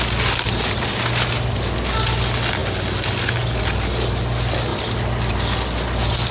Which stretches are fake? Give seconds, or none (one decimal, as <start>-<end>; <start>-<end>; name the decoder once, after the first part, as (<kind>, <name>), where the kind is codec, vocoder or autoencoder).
none

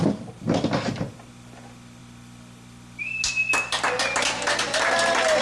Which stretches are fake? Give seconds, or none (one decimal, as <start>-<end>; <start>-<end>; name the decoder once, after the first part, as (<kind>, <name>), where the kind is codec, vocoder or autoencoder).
none

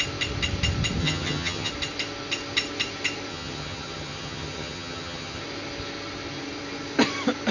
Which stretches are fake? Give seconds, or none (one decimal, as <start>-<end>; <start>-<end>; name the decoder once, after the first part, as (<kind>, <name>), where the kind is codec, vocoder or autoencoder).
1.0-1.7 (vocoder, HiFi-GAN); 3.3-5.4

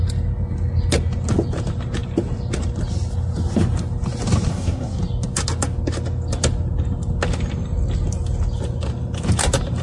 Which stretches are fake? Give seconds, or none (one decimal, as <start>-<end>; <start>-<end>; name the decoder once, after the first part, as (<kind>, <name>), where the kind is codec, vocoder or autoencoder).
4.5-5.0 (codec, SNAC)